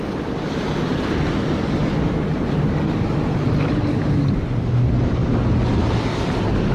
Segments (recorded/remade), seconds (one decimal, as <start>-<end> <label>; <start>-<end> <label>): 0.0-6.7 recorded